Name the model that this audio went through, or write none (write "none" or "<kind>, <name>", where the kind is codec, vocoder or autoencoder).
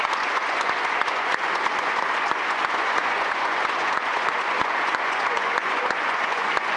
vocoder, Vocos